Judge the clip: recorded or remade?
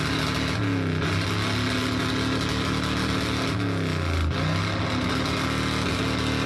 recorded